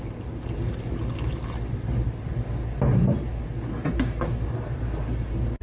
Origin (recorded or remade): recorded